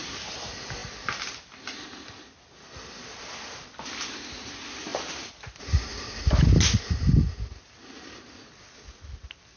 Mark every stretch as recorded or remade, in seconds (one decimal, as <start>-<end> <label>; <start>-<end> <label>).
0.0-9.6 recorded